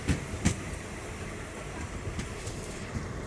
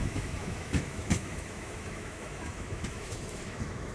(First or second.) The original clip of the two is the first